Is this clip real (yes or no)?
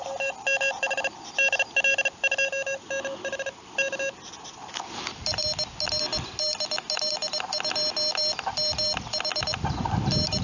yes